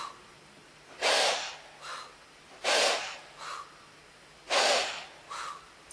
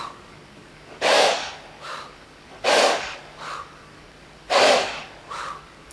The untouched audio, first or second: first